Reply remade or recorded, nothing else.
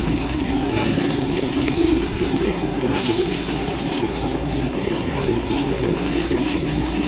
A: remade